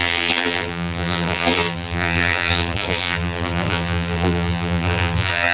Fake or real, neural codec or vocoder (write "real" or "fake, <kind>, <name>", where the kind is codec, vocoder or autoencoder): fake, vocoder, BigVGAN v2